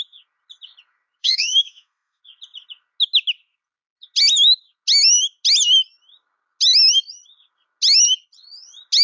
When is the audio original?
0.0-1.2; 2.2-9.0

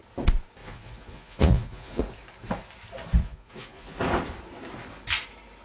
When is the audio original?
0.0-0.6; 2.0-3.2; 4.0-5.6

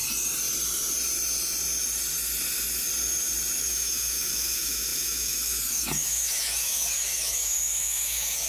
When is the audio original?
0.0-3.6

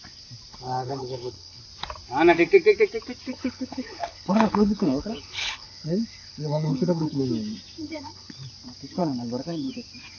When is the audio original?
0.0-0.5; 1.6-3.3; 7.2-7.8; 8.5-9.0; 9.7-10.2

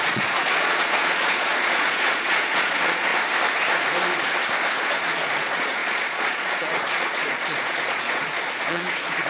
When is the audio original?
3.1-4.8

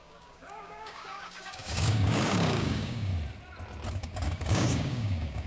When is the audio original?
3.1-3.9